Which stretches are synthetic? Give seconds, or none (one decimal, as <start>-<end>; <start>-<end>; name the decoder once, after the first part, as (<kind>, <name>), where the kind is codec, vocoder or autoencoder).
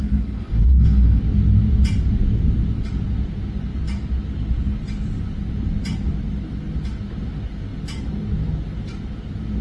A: 0.0-1.2 (codec, SNAC)